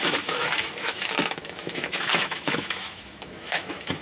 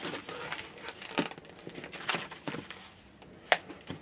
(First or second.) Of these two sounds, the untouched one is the second